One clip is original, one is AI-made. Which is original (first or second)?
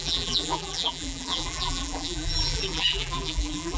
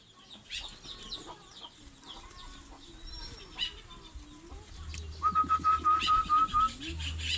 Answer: second